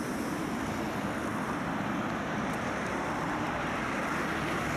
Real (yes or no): no